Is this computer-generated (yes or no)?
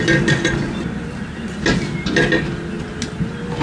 no